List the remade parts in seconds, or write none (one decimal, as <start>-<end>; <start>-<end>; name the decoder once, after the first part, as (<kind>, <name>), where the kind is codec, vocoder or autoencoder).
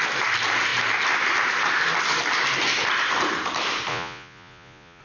3.9-5.0 (vocoder, Vocos)